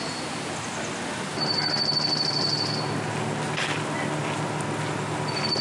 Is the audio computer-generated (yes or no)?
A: no